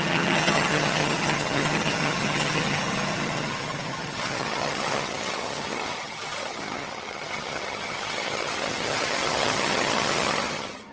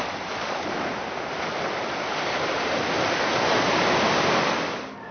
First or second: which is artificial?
first